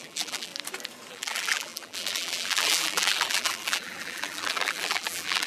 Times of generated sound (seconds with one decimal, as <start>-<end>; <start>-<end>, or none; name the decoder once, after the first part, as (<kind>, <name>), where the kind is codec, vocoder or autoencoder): 0.0-0.5 (vocoder, BigVGAN v2); 1.1-5.5